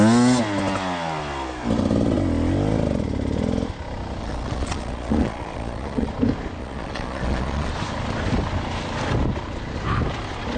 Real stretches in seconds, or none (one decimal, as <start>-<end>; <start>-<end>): 0.0-4.2; 6.1-6.6; 7.7-10.6